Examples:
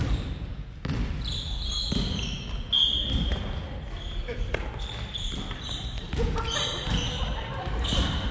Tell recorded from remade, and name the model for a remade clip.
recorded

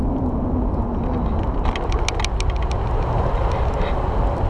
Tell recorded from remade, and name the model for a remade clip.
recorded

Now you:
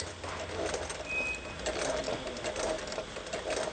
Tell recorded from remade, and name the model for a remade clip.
recorded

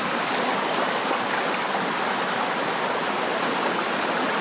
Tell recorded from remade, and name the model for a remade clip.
recorded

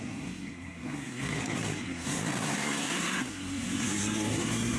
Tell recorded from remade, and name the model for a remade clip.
remade, codec, SNAC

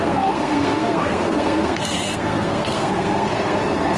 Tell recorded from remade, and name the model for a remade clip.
remade, codec, SNAC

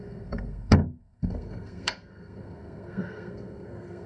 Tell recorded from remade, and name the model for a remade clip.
remade, codec, SNAC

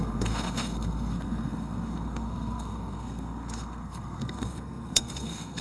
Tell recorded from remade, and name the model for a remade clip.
remade, codec, SNAC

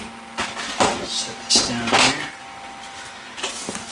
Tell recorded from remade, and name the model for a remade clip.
recorded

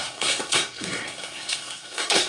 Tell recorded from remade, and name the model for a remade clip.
remade, codec, SNAC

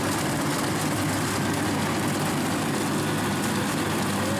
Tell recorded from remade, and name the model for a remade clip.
recorded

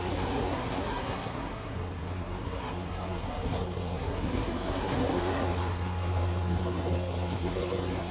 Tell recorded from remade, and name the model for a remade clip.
remade, codec, SNAC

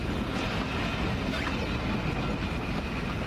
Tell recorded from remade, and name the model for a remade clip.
recorded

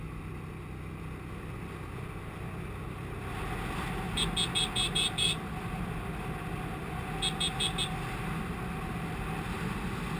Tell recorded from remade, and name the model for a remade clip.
recorded